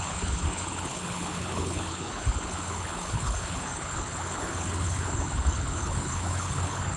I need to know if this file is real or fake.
fake